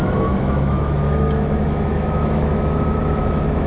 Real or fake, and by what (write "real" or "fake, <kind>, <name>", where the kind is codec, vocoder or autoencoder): fake, autoencoder, DAC-VAE